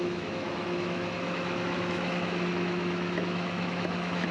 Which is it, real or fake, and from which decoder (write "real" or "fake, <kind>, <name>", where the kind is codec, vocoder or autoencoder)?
fake, autoencoder, DAC-VAE